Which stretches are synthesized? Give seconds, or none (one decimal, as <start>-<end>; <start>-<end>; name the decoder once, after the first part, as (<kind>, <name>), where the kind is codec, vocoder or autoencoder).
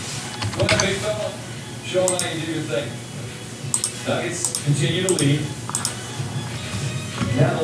none